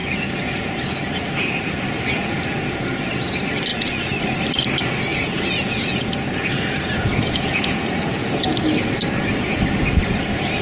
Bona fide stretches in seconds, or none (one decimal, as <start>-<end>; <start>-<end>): 3.1-3.7; 4.2-5.1; 8.6-10.6

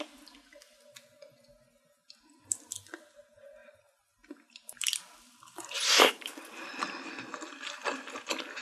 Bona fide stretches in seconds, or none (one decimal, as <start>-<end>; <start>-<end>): 0.0-2.0; 2.9-3.6; 7.1-8.6